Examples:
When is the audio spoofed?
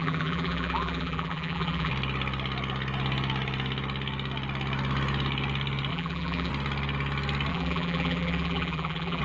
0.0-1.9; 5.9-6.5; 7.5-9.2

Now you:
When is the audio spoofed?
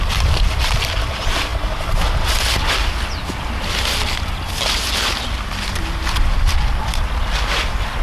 none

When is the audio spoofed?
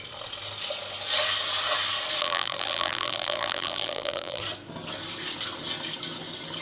2.2-4.4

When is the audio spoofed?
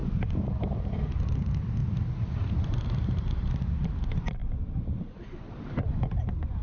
0.0-1.8; 2.5-4.4; 5.4-6.6